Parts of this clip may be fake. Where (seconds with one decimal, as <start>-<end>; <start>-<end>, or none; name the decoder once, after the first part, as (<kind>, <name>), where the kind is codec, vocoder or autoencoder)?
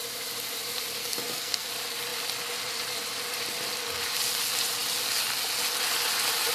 1.0-1.7 (codec, SNAC)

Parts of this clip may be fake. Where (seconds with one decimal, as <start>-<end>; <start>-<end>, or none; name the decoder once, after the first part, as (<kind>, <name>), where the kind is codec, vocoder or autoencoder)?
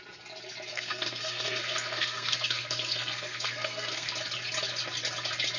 0.7-4.1 (codec, SNAC)